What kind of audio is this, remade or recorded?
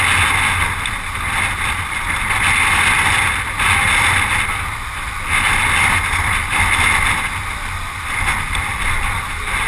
recorded